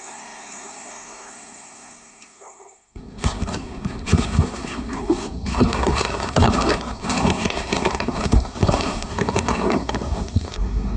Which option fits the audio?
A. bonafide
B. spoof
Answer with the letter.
B